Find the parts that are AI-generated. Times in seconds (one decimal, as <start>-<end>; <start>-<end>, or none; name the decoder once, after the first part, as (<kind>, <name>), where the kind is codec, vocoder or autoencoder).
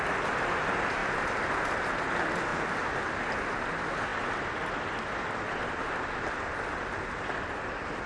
2.5-3.1 (vocoder, BigVGAN v2)